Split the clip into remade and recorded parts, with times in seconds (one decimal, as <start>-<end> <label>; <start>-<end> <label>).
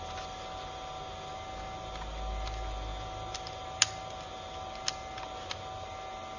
0.0-6.4 recorded